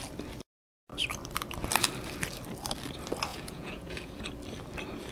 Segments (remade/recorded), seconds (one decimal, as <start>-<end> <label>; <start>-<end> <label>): 0.0-3.3 recorded; 3.3-4.2 remade; 4.2-5.1 recorded